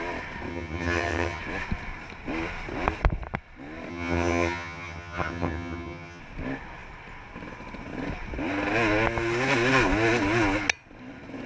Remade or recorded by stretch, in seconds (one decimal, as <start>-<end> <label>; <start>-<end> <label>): 0.0-0.5 recorded; 0.5-1.4 remade; 1.4-3.9 recorded; 3.9-6.2 remade; 6.2-11.5 recorded